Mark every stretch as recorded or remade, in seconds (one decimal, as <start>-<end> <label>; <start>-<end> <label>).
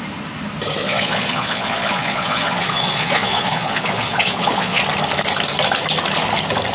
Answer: 0.0-0.8 recorded; 0.8-4.8 remade; 4.8-6.7 recorded